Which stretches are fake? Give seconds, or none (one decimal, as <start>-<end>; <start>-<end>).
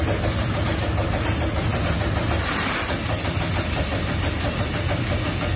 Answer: none